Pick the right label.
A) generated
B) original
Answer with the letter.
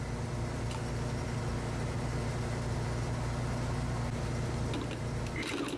B